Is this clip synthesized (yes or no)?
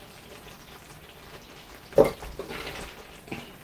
no